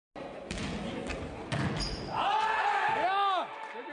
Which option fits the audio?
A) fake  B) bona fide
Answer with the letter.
B